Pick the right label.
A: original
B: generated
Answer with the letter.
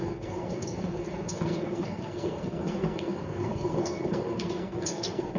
B